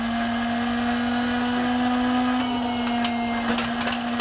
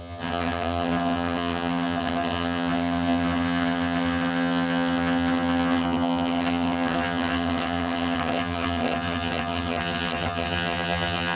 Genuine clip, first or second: first